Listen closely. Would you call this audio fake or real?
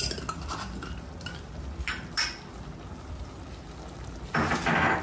real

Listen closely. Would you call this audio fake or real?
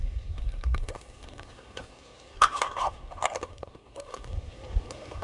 fake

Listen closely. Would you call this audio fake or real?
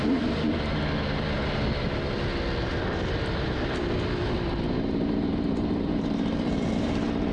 real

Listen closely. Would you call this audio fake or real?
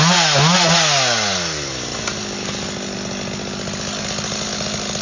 real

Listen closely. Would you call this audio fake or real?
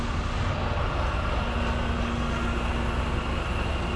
real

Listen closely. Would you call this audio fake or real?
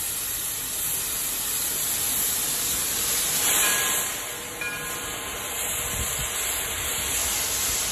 real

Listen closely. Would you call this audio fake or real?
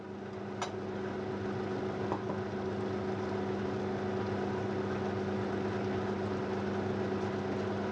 real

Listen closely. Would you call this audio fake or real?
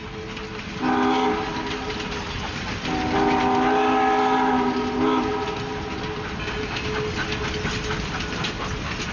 real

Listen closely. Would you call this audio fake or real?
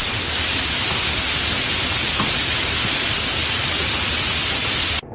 real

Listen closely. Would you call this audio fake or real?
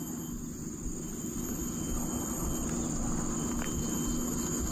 real